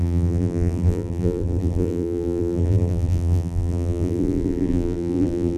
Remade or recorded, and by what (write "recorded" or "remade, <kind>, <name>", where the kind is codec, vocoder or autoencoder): remade, vocoder, BigVGAN v2